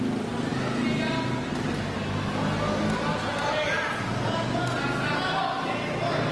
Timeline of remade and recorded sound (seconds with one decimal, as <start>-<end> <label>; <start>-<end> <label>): 0.0-6.3 recorded